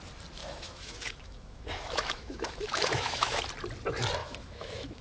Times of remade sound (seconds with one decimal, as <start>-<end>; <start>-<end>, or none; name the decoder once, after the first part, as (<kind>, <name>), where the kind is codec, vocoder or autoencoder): 0.4-3.4 (autoencoder, DAC-VAE); 4.2-5.0